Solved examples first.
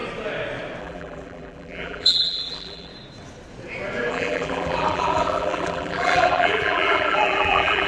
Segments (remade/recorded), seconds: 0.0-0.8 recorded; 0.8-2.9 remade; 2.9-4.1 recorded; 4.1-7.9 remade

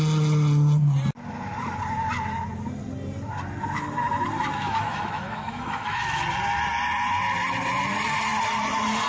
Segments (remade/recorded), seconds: 0.0-4.6 recorded; 4.6-6.2 remade; 6.2-9.1 recorded